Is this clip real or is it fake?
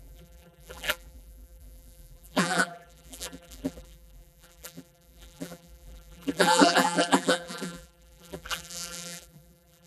fake